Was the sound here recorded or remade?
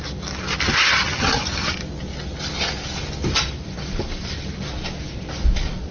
recorded